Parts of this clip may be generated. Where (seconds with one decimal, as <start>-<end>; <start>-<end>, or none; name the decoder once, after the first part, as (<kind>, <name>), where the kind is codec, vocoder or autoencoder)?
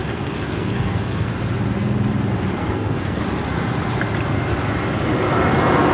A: 0.0-1.3 (codec, SNAC); 2.6-3.2